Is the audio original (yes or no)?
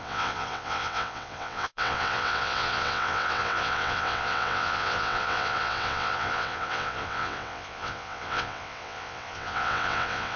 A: no